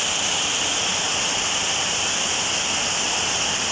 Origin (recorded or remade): recorded